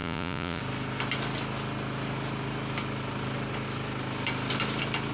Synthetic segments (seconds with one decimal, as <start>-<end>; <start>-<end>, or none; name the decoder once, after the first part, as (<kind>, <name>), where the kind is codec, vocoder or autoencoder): 0.0-0.6 (vocoder, Vocos)